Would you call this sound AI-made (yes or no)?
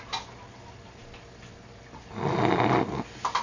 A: no